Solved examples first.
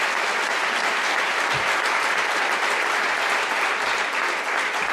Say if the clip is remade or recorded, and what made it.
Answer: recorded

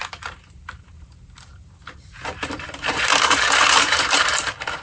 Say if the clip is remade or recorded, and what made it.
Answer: remade, vocoder, BigVGAN v2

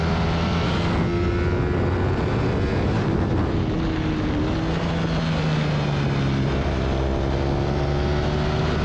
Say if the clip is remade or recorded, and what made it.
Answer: recorded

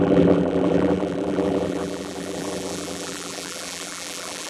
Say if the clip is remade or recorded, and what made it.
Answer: remade, vocoder, BigVGAN v2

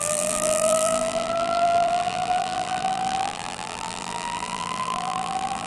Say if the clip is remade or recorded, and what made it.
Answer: remade, vocoder, BigVGAN v2